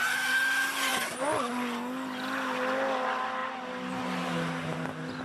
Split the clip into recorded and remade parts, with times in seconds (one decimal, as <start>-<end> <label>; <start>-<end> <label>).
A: 0.0-5.2 recorded